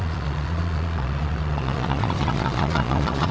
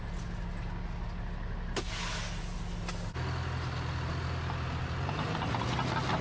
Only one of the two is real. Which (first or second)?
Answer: second